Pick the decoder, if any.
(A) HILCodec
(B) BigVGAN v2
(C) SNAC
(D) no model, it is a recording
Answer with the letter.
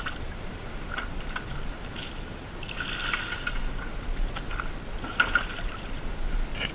D